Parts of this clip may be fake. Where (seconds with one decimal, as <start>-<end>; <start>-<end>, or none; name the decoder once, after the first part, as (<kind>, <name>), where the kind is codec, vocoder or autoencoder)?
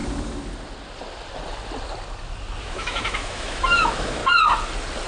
2.6-4.2 (autoencoder, DAC-VAE)